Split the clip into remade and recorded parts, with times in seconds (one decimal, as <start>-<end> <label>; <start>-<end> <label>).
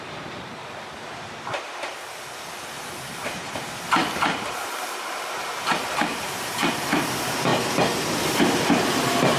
0.0-0.6 remade; 0.6-2.8 recorded; 2.8-7.5 remade; 7.5-8.1 recorded; 8.1-9.4 remade